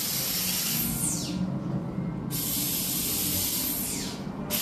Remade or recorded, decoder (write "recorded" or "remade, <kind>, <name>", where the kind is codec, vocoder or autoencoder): recorded